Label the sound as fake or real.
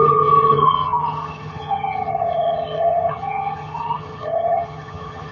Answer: fake